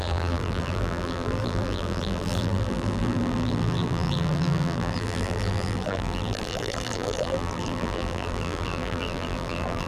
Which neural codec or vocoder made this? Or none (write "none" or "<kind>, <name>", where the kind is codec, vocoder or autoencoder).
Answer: vocoder, BigVGAN v2